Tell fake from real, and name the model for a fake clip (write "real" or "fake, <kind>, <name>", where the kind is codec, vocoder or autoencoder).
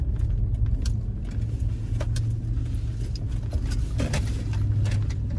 real